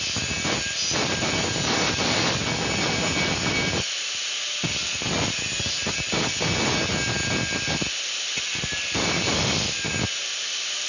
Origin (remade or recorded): recorded